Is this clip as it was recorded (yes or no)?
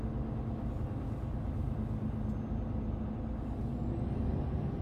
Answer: yes